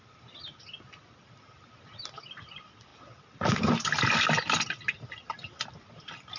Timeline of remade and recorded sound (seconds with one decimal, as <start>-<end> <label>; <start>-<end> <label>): 0.0-6.4 recorded